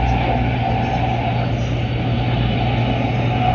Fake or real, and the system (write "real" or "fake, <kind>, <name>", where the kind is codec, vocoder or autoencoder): real